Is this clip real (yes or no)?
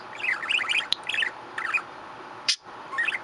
no